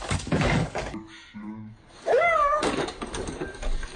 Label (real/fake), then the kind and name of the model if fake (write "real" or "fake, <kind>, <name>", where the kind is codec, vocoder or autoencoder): fake, codec, DAC